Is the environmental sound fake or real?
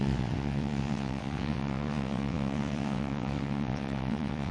fake